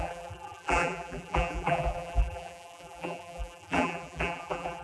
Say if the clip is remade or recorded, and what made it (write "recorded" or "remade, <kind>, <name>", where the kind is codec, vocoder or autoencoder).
remade, vocoder, BigVGAN v2